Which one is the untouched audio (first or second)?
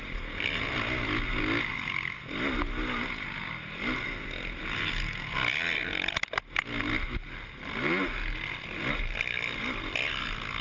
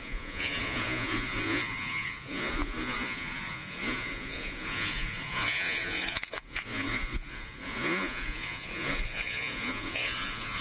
first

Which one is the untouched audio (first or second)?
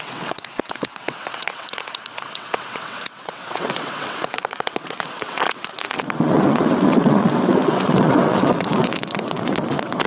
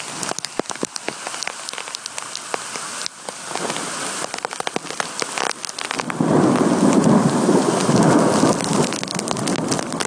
second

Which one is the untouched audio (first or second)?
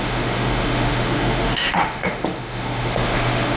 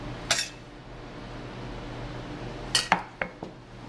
second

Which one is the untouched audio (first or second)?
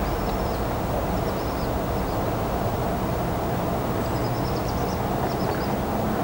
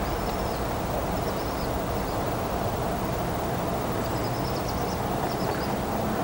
first